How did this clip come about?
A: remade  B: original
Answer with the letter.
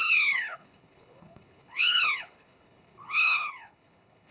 A